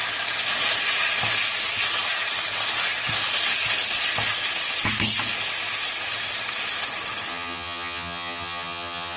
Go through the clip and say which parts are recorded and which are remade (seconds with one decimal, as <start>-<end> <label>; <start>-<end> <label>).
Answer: 0.0-7.3 recorded; 7.3-9.2 remade